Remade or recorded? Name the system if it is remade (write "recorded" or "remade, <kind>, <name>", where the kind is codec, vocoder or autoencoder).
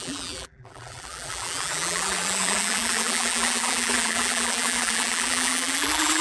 remade, vocoder, BigVGAN v2